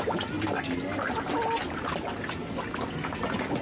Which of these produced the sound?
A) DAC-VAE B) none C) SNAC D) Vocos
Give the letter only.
B